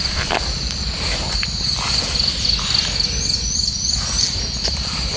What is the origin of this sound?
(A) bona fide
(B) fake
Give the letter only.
A